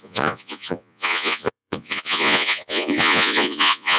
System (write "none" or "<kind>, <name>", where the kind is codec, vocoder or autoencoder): vocoder, Vocos